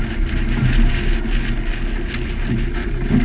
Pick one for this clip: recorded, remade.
recorded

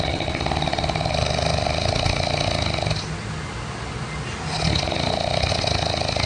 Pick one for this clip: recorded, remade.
recorded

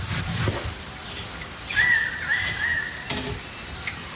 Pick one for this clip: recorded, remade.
remade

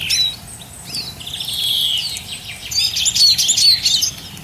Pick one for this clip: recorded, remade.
recorded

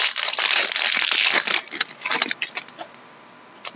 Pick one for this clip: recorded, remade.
recorded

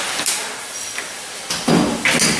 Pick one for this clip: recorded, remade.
recorded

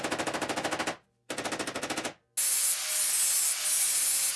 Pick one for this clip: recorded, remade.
recorded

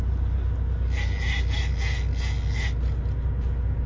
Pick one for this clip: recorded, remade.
recorded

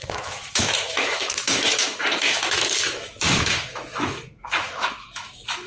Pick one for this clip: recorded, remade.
remade